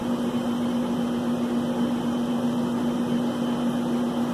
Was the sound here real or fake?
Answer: real